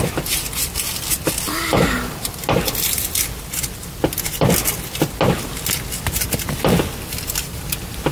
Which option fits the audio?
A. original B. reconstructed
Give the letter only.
A